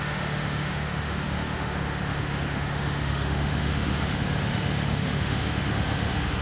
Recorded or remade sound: remade